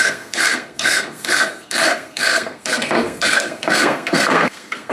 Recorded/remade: remade